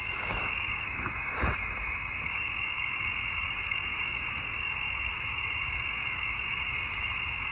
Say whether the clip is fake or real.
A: fake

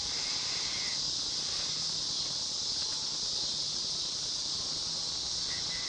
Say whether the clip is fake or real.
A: real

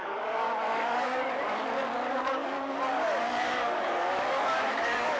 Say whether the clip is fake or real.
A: fake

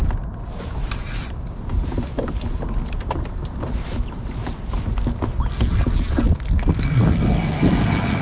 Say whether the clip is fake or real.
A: real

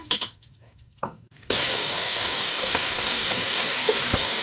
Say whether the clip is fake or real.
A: fake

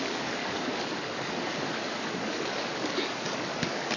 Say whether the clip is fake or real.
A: fake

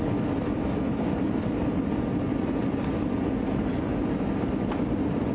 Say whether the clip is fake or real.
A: real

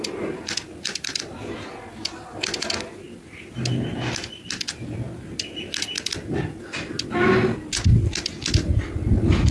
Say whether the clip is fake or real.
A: real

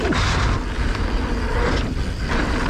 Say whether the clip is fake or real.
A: real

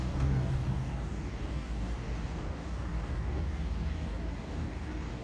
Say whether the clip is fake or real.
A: fake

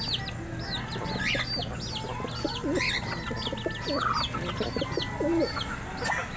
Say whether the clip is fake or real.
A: real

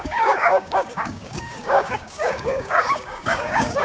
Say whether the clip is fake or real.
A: fake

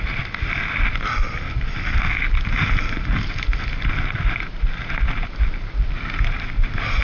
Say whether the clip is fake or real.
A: real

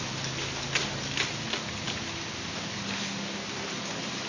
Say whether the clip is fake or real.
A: real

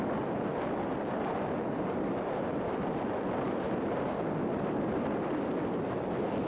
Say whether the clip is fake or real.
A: real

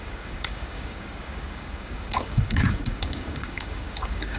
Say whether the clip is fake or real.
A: fake